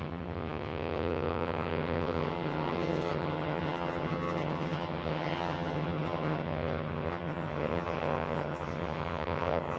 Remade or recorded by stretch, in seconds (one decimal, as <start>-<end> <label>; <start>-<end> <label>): 0.0-9.8 remade